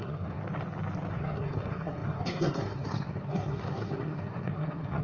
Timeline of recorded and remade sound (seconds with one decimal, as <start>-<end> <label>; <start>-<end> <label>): 0.0-0.4 remade; 0.4-1.1 recorded; 1.1-5.0 remade